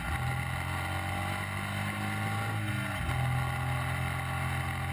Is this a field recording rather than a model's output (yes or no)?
yes